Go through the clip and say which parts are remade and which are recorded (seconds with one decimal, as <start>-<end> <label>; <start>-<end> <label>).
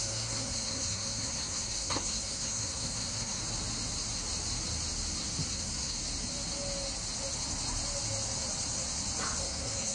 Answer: 0.0-3.4 remade; 3.4-5.5 recorded; 5.5-6.0 remade; 6.0-9.4 recorded; 9.4-9.9 remade